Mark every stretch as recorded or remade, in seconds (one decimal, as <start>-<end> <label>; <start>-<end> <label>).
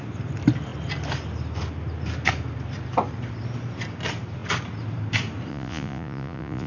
0.0-5.5 recorded; 5.5-6.7 remade